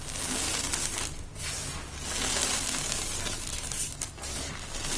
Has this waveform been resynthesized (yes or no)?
no